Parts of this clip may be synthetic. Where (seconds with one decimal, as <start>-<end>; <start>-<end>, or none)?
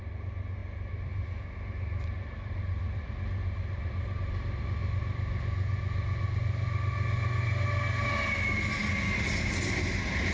0.6-4.6